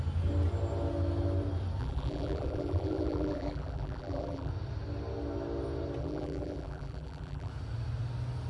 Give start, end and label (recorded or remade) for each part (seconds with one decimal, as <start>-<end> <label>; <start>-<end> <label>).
0.0-1.8 recorded; 1.8-4.5 remade; 4.5-6.0 recorded; 6.0-7.5 remade; 7.5-8.5 recorded